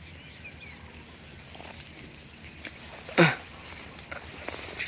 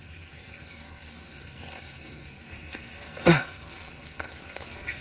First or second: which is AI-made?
second